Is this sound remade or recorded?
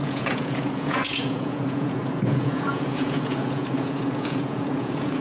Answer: remade